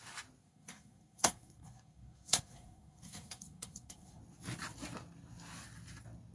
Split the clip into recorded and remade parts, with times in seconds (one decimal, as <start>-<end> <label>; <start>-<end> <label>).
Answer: 0.0-0.4 recorded; 0.4-4.2 remade; 4.2-6.3 recorded

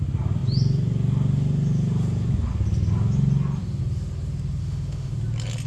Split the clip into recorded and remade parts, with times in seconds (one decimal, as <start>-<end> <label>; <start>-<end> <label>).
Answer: 0.0-4.6 recorded; 4.6-5.1 remade; 5.1-5.7 recorded

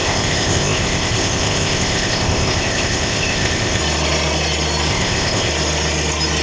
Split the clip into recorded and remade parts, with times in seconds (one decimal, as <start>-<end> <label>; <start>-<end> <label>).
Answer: 0.0-3.8 remade; 3.8-4.9 recorded; 4.9-5.5 remade; 5.5-6.4 recorded

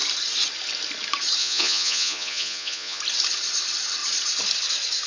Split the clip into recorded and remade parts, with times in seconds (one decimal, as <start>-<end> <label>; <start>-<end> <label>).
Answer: 0.0-1.4 recorded; 1.4-3.0 remade; 3.0-5.1 recorded

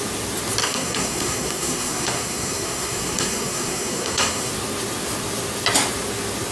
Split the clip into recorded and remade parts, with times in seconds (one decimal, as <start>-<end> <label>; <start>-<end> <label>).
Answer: 0.0-0.6 recorded; 0.6-4.5 remade; 4.5-6.5 recorded